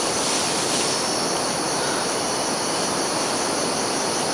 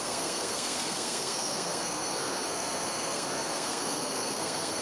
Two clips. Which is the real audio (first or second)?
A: first